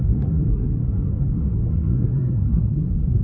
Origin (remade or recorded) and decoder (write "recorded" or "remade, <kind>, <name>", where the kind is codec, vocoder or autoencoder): remade, codec, SNAC